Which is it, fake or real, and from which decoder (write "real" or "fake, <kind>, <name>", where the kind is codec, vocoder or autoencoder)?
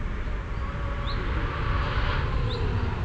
real